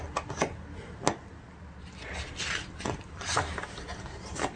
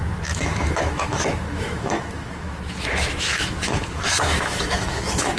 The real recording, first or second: first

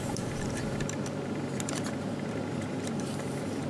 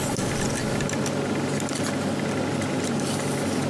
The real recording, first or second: second